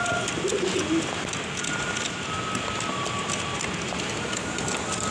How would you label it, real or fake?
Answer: real